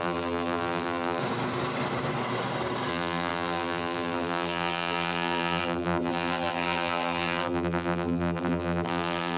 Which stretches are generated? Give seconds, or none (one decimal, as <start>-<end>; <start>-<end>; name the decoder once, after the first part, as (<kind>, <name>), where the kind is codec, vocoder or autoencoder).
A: 0.0-1.2 (vocoder, BigVGAN v2); 2.9-9.4